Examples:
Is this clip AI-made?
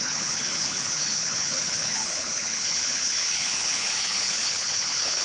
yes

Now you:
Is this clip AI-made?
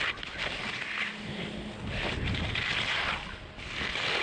no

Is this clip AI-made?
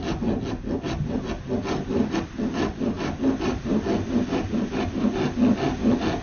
no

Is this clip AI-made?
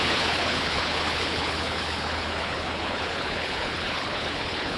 yes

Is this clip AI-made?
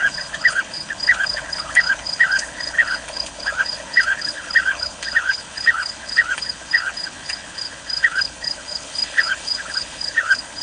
yes